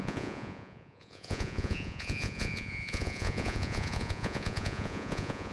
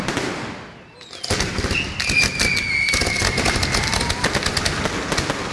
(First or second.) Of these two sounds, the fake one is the first